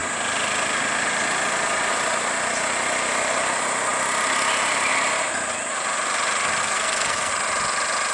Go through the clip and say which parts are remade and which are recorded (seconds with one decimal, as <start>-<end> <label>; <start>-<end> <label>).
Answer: 0.0-6.6 recorded; 6.6-7.3 remade; 7.3-8.1 recorded